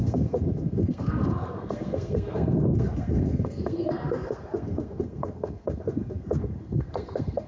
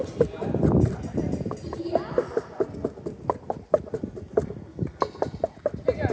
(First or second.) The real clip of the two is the second